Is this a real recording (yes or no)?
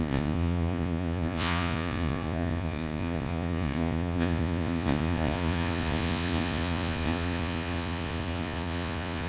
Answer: no